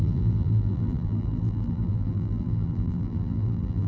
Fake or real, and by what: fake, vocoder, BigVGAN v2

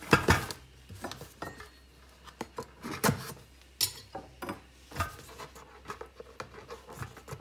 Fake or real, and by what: real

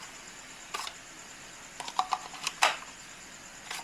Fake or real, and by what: real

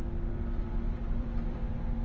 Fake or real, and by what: fake, vocoder, BigVGAN v2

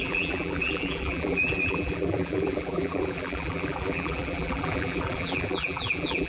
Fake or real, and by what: fake, vocoder, BigVGAN v2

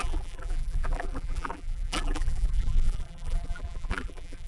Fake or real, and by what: fake, vocoder, BigVGAN v2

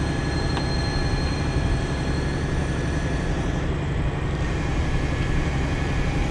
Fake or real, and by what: fake, vocoder, BigVGAN v2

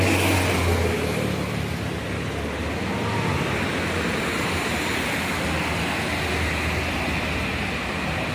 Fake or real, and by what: real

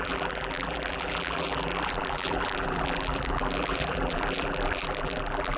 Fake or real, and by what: fake, vocoder, BigVGAN v2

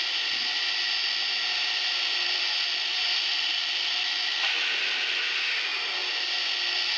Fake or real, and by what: real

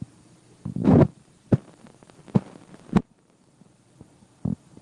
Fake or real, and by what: fake, vocoder, BigVGAN v2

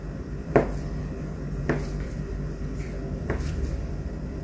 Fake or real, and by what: fake, vocoder, BigVGAN v2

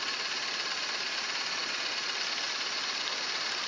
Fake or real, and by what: real